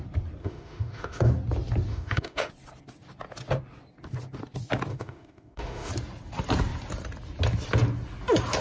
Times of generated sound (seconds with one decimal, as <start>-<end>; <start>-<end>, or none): 0.4-1.3; 1.9-2.5; 4.9-5.9